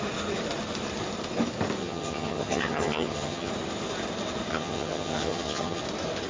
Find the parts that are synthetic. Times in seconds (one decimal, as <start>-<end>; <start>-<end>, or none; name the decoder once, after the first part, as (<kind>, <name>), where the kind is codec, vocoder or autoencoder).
1.8-3.5 (vocoder, HiFi-GAN); 4.5-5.8